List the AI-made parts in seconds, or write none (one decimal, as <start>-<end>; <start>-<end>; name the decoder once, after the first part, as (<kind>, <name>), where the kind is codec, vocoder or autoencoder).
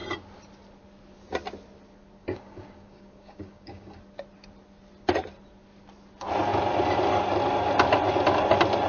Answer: 2.2-4.0 (codec, DAC)